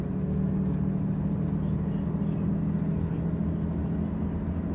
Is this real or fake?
real